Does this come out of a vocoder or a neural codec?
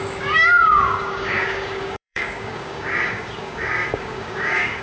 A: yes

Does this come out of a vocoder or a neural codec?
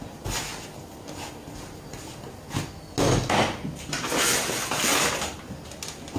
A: no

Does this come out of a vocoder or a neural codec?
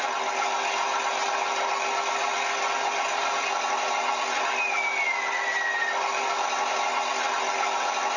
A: no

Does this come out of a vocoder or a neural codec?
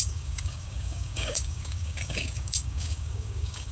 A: yes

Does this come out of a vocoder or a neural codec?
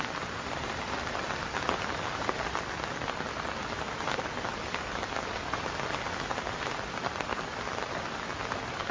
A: no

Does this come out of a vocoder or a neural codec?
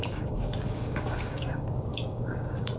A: yes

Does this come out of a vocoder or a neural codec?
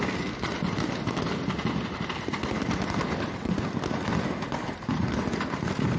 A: no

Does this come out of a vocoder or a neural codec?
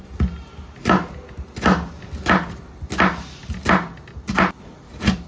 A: no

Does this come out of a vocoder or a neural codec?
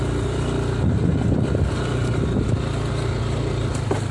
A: no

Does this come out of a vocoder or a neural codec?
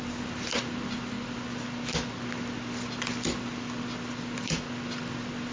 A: no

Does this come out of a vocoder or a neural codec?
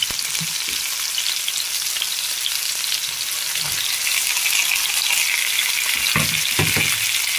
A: no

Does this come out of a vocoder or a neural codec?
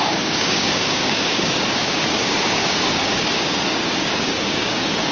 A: yes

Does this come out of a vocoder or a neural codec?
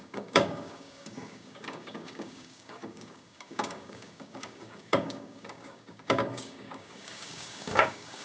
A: yes